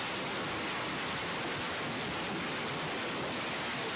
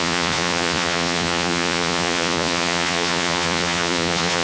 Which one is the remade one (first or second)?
second